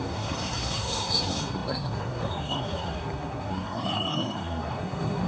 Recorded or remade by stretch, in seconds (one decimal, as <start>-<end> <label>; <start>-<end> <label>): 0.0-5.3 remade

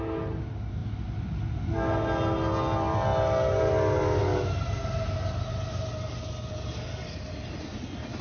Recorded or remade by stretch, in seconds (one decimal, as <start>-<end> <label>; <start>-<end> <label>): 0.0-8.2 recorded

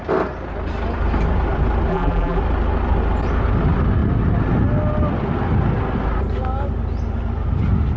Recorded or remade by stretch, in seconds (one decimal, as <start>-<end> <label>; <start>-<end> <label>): 0.0-1.9 recorded; 1.9-2.4 remade; 2.4-8.0 recorded

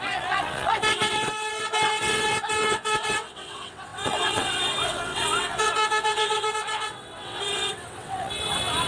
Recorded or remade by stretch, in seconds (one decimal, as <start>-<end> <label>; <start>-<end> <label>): 0.0-8.9 remade

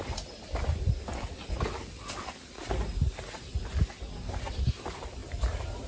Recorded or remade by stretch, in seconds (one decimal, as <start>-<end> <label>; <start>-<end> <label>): 0.0-5.9 recorded

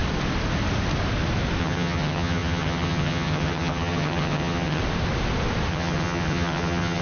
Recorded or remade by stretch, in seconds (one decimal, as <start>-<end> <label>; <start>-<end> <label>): 0.0-1.6 recorded; 1.6-4.8 remade; 4.8-5.7 recorded; 5.7-7.0 remade

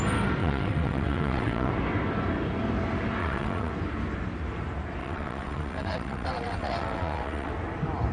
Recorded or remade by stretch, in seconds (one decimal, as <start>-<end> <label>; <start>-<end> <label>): 0.0-0.4 recorded; 0.4-1.7 remade; 1.7-3.2 recorded; 3.2-3.7 remade; 3.7-5.0 recorded; 5.0-7.5 remade; 7.5-8.1 recorded

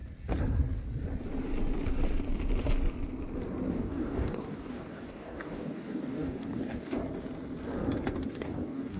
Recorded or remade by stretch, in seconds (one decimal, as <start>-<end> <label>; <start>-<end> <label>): 0.0-3.7 recorded; 3.7-7.0 remade; 7.0-8.3 recorded; 8.3-9.0 remade